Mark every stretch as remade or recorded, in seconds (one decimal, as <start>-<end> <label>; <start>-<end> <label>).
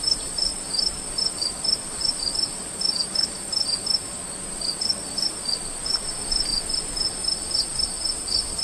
0.0-0.5 remade; 0.5-1.3 recorded; 1.3-3.3 remade; 3.3-4.5 recorded; 4.5-6.5 remade; 6.5-7.6 recorded; 7.6-8.6 remade